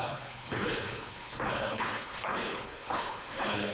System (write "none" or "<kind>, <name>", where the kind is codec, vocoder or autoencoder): codec, HILCodec